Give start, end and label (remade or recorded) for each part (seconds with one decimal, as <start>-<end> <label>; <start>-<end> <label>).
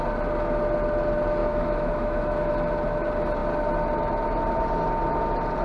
0.0-1.4 recorded; 1.4-2.5 remade; 2.5-5.6 recorded